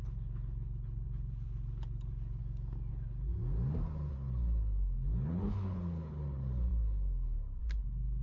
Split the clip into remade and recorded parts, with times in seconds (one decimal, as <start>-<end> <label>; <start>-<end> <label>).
0.0-2.4 remade; 2.4-2.9 recorded; 2.9-3.3 remade; 3.3-4.1 recorded; 4.1-8.2 remade

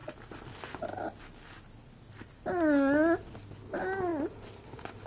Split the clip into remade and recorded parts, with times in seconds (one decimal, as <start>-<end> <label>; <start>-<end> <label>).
0.0-5.1 recorded

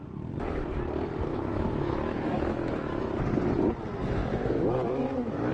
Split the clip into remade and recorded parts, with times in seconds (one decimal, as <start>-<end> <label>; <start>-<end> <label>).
0.0-1.3 recorded; 1.3-3.1 remade; 3.1-4.2 recorded; 4.2-5.5 remade